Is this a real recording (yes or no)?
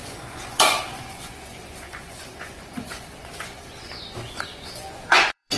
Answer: no